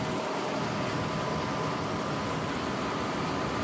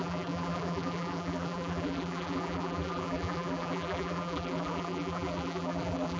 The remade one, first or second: second